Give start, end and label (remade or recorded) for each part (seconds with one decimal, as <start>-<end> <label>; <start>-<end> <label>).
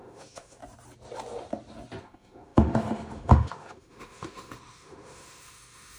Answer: 0.0-0.6 remade; 0.6-2.0 recorded; 2.0-6.0 remade